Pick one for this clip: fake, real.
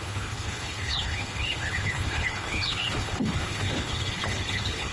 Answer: fake